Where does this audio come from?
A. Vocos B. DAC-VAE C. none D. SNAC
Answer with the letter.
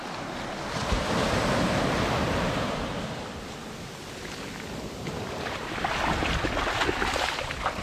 C